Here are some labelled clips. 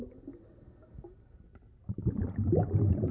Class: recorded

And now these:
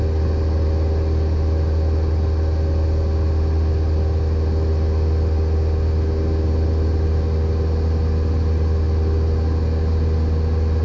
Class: recorded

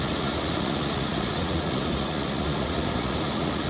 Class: remade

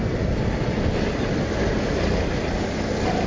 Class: recorded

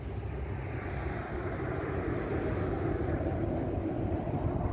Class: recorded